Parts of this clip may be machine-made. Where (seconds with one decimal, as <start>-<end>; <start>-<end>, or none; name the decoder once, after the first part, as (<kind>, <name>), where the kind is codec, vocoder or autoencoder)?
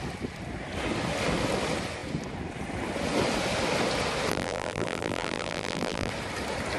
4.3-6.1 (vocoder, BigVGAN v2)